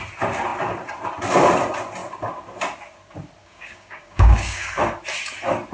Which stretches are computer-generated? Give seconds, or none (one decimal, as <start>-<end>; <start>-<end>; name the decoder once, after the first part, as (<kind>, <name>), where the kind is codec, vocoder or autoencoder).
3.4-4.7 (codec, DAC)